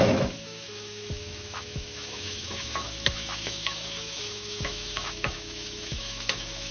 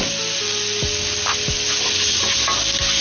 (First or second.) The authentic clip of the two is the second